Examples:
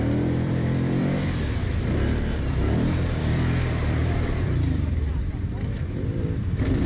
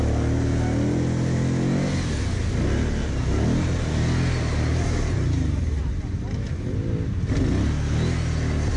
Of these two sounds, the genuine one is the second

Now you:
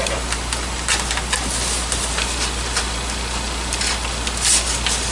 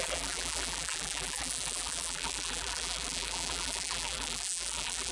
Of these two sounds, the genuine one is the first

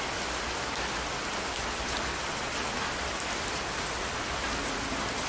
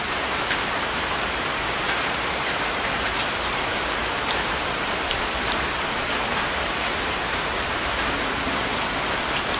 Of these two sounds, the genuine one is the first